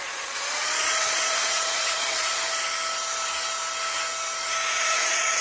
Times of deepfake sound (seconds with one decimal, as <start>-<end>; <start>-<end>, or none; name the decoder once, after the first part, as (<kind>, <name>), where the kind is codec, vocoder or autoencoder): 0.0-2.3 (vocoder, Vocos); 4.7-5.4